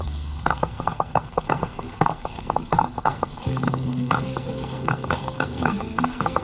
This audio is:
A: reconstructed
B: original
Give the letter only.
A